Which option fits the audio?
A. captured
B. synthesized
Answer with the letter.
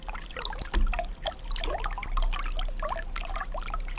A